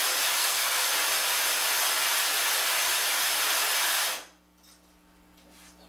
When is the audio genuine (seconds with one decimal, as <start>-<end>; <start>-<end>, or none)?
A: 0.0-0.4; 0.9-5.9